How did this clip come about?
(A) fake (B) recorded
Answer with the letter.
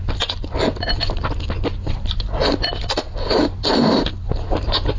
A